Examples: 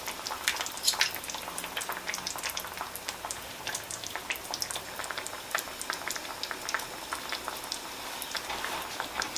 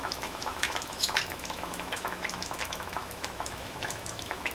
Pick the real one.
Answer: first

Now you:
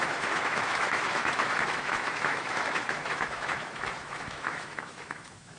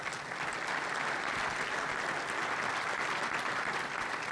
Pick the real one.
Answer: second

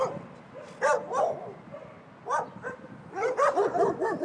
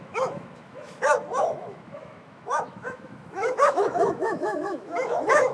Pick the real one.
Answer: first